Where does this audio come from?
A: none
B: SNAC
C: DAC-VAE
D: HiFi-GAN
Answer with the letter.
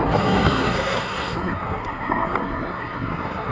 B